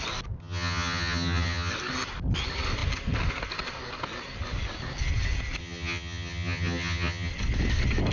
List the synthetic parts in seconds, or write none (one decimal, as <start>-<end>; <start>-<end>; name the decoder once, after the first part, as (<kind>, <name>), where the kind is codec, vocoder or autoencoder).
0.4-1.7 (vocoder, HiFi-GAN); 5.6-7.3